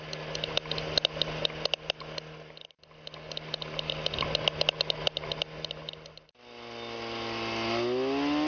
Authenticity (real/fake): real